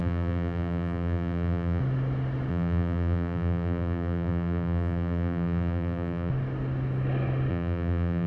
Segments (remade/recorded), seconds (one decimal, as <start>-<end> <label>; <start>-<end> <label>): 0.0-1.8 remade; 1.8-2.5 recorded; 2.5-6.3 remade; 6.3-7.5 recorded; 7.5-8.3 remade